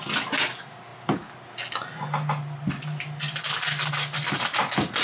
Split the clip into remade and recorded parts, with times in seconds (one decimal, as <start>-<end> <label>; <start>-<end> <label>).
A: 0.0-5.0 recorded